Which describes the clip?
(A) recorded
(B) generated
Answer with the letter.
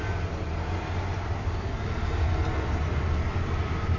A